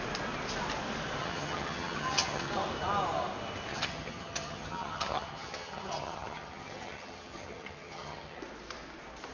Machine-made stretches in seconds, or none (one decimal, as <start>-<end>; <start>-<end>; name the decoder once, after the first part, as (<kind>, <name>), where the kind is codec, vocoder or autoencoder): 1.2-2.5 (vocoder, HiFi-GAN); 3.7-8.4